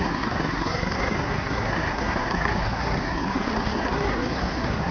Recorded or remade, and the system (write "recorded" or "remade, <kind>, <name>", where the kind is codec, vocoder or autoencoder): remade, codec, SNAC